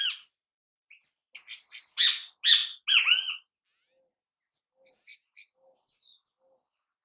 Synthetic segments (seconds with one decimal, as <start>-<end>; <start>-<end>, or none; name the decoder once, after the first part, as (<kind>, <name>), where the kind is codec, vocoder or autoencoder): none